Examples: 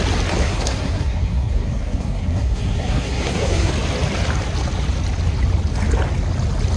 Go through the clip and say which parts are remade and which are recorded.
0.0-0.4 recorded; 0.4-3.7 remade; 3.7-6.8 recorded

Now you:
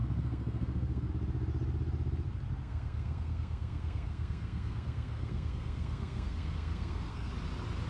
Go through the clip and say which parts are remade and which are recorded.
0.0-1.1 remade; 1.1-2.6 recorded; 2.6-7.3 remade; 7.3-7.9 recorded